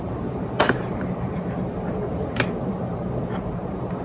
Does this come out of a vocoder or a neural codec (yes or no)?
yes